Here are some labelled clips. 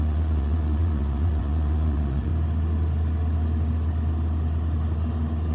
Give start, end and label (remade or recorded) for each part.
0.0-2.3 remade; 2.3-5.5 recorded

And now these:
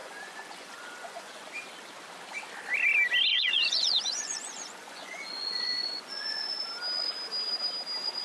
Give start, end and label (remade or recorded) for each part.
0.0-1.5 remade; 1.5-3.3 recorded; 3.3-6.6 remade; 6.6-8.2 recorded

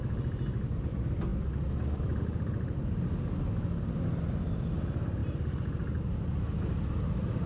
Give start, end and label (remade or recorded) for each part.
0.0-7.5 recorded

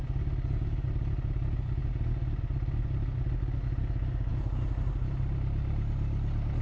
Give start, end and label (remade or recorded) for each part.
0.0-6.6 recorded

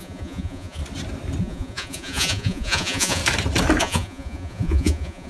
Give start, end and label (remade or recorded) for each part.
0.0-0.8 remade; 0.8-1.4 recorded; 1.4-3.2 remade; 3.2-3.8 recorded; 3.8-5.3 remade

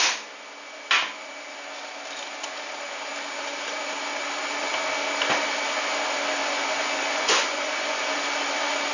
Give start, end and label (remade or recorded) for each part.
0.0-6.4 recorded; 6.4-8.0 remade; 8.0-8.9 recorded